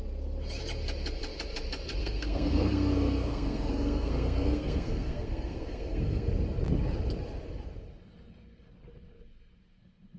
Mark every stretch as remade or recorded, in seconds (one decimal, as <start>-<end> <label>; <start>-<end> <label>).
0.0-2.0 recorded; 2.0-6.3 remade; 6.3-10.2 recorded